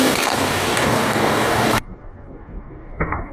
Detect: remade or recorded remade